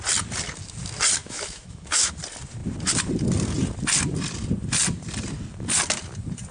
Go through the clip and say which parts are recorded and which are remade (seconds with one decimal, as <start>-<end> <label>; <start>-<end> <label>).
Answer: 0.0-1.2 recorded; 1.2-2.1 remade; 2.1-6.5 recorded